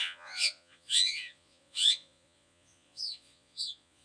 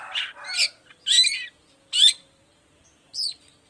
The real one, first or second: second